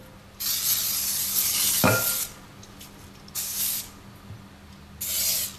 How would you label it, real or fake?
real